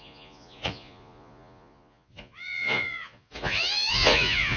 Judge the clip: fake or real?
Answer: fake